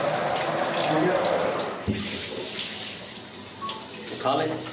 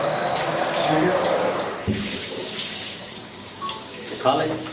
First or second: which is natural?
first